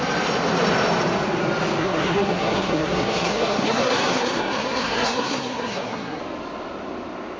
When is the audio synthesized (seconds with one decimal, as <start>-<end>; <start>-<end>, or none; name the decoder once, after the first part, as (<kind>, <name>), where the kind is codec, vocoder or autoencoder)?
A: 1.8-6.2 (codec, SNAC)